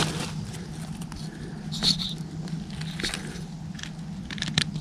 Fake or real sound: real